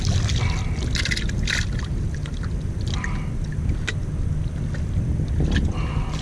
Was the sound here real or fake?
real